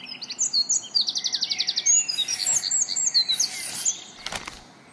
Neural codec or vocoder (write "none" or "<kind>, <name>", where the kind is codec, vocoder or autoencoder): none